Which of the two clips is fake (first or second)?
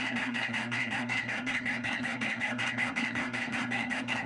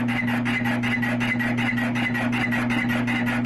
first